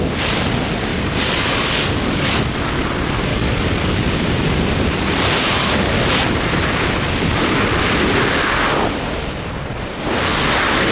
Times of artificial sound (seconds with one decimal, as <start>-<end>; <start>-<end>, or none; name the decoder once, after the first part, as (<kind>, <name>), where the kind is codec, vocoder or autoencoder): 0.9-2.6 (codec, DAC); 3.3-3.9